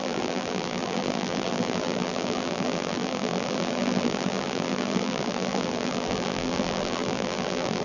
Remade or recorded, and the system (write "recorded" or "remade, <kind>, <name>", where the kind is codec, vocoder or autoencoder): remade, vocoder, BigVGAN v2